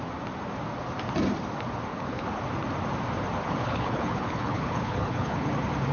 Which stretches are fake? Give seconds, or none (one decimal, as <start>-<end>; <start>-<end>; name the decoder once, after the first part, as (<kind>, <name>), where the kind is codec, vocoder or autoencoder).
1.9-2.4 (codec, HILCodec); 3.4-5.5